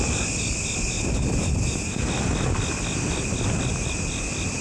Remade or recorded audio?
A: recorded